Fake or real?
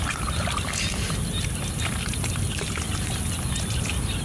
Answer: real